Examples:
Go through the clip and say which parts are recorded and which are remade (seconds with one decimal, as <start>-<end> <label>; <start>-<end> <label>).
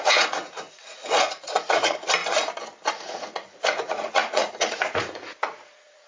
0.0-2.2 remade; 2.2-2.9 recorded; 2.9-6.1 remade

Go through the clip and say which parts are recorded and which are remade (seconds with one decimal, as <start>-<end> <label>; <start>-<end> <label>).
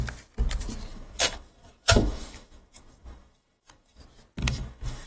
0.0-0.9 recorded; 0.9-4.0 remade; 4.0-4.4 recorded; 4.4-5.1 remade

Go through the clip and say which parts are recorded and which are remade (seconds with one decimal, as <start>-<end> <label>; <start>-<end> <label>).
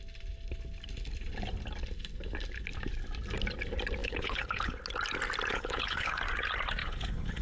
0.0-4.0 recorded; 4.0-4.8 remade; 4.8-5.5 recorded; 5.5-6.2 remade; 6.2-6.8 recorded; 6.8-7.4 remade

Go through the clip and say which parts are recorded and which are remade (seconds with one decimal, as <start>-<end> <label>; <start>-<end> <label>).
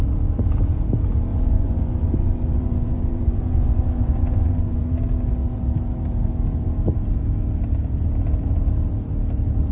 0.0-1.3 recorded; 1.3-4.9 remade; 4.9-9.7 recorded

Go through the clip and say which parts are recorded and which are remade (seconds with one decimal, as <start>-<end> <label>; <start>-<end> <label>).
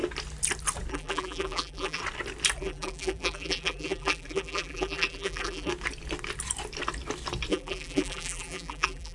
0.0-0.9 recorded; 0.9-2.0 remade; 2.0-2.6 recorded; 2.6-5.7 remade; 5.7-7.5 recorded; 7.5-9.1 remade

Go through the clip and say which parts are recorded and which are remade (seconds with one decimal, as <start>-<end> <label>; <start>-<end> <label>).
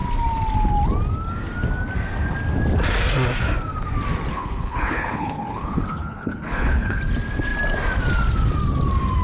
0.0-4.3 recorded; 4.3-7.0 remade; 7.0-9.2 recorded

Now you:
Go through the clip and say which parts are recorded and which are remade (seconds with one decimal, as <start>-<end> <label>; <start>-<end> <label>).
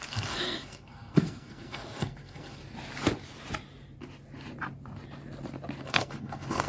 0.0-2.6 remade; 2.6-5.8 recorded; 5.8-6.7 remade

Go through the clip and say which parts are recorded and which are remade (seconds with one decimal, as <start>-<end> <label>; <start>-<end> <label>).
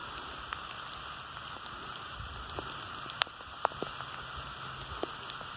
0.0-5.6 recorded